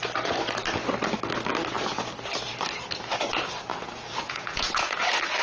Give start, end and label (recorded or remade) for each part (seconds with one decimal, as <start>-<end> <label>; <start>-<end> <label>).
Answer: 0.0-3.7 recorded; 3.7-5.0 remade; 5.0-5.4 recorded